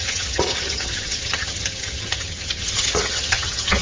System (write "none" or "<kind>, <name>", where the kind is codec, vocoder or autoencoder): vocoder, HiFi-GAN